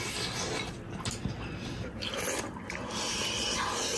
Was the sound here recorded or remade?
recorded